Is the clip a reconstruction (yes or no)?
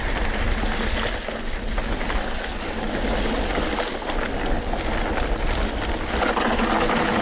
no